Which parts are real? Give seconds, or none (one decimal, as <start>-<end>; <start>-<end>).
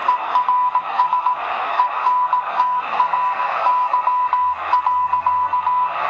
none